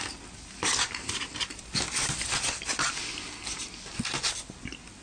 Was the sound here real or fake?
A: real